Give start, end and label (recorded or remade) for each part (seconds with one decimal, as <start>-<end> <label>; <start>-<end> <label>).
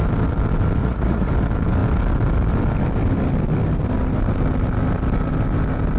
0.0-0.8 recorded; 0.8-1.3 remade; 1.3-6.0 recorded